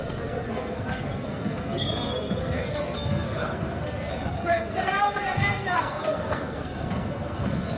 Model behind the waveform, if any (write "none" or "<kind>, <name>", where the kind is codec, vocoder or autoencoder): codec, SNAC